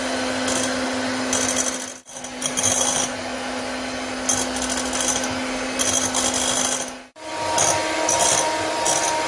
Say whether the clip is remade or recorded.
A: recorded